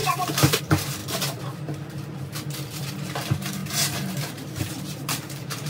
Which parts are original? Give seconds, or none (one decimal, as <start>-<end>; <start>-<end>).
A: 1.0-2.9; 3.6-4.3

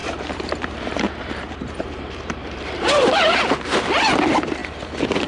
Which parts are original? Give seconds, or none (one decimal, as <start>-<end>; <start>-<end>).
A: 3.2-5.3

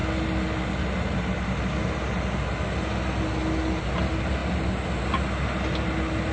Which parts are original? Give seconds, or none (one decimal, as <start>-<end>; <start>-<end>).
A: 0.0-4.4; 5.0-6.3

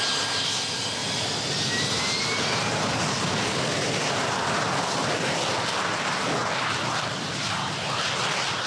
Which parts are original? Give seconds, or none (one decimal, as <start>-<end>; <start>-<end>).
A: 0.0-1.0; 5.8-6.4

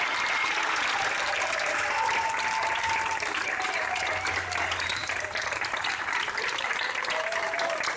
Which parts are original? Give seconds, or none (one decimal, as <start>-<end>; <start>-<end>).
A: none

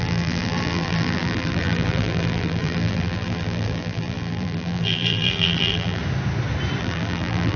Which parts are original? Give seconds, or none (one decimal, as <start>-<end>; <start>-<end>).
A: 6.0-6.8